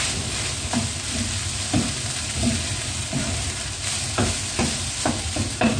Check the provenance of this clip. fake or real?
real